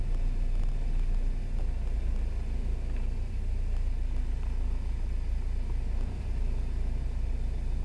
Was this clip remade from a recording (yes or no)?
no